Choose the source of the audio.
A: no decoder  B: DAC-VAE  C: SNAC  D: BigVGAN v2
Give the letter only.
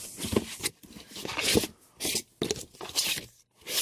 A